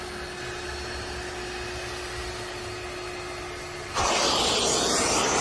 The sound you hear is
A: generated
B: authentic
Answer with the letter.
B